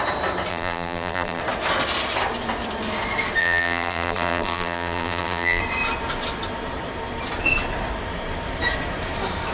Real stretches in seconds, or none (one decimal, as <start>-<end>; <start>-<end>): 0.0-0.5; 1.4-3.4; 5.6-9.5